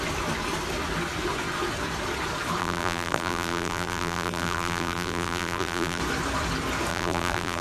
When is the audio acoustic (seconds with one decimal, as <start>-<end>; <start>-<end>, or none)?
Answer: 0.0-2.6; 6.0-6.9